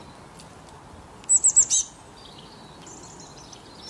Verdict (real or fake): real